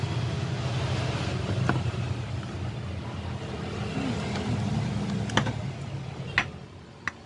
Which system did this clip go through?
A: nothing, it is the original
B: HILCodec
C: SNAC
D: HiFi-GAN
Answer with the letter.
A